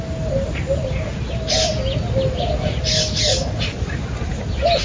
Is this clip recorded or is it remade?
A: recorded